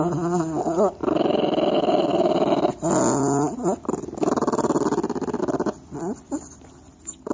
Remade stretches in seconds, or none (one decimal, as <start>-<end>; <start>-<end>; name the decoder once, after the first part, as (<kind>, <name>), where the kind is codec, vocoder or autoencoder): none